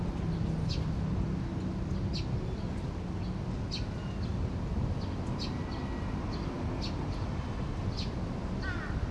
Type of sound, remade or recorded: recorded